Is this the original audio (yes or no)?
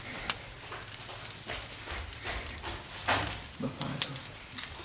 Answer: yes